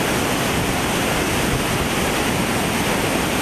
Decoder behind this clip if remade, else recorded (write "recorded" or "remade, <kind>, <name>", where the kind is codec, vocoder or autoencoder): recorded